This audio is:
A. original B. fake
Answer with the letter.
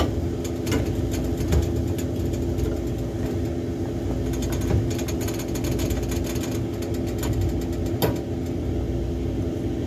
A